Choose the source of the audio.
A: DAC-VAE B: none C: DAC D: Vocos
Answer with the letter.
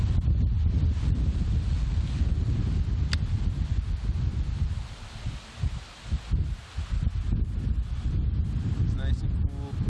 B